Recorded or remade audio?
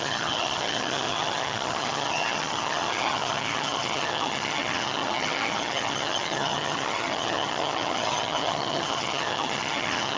remade